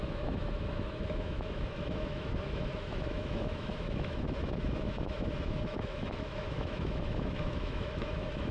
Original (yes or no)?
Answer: no